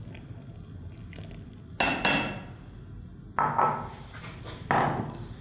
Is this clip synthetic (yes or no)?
no